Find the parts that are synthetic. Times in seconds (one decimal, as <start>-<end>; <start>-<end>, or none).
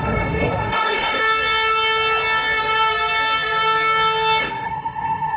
0.0-1.2; 4.4-5.4